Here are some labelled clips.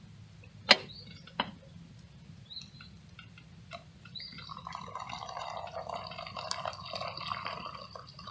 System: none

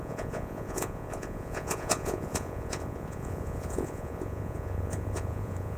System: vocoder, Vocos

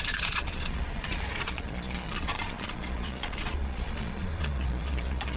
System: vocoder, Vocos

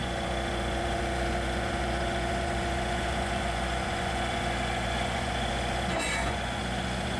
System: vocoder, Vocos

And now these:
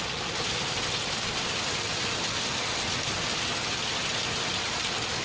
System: none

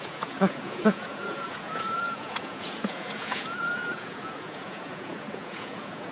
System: vocoder, Vocos